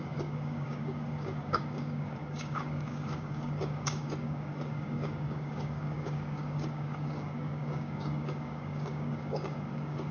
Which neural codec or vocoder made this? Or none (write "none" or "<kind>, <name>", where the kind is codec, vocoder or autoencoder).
codec, DAC